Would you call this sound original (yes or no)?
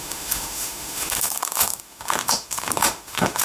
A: no